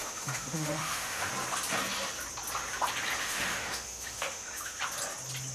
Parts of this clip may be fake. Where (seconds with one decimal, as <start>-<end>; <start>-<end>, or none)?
0.0-1.3; 3.2-4.8